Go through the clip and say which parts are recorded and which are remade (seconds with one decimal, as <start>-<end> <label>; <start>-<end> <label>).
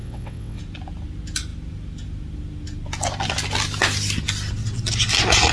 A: 0.0-0.6 remade; 0.6-5.5 recorded